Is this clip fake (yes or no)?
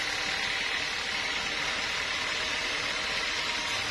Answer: no